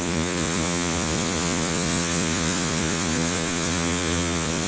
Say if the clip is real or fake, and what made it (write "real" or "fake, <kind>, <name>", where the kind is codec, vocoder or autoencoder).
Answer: fake, vocoder, Vocos